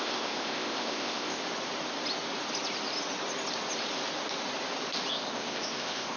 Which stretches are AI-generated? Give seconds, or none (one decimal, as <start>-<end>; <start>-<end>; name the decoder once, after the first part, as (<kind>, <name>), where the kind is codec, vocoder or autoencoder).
0.0-1.4 (codec, ZipCodec); 5.1-6.2